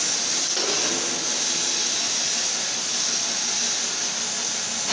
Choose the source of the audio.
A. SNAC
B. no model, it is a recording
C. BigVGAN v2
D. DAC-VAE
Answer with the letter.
B